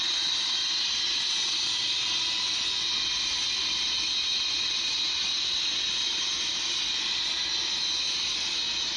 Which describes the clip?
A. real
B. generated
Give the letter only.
A